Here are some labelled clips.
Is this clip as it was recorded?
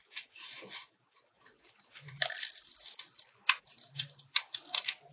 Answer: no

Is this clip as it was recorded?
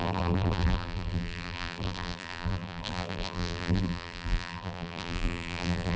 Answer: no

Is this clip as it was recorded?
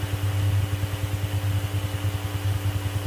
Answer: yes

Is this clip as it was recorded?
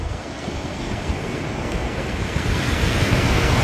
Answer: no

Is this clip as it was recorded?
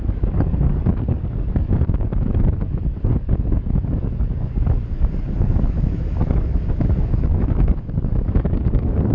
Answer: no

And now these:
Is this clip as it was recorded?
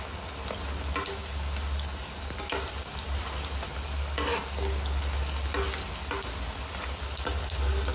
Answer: yes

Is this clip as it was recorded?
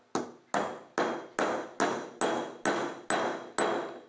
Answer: yes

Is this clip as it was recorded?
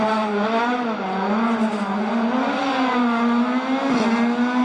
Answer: yes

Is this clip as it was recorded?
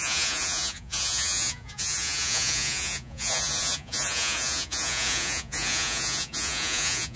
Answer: no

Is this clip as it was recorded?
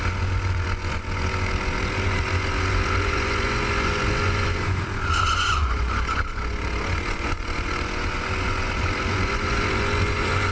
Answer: no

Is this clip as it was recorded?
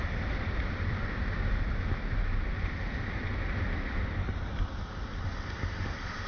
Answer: yes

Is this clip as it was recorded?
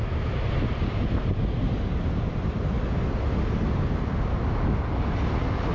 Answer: yes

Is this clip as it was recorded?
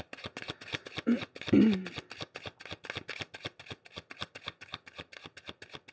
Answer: yes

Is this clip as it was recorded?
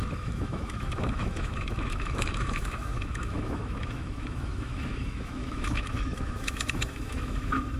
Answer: no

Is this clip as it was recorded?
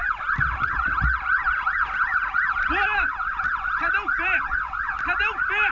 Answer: yes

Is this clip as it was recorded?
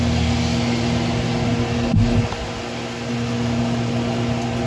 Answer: yes